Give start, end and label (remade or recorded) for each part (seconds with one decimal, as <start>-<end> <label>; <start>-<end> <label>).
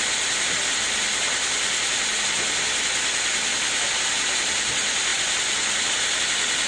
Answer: 0.0-6.7 recorded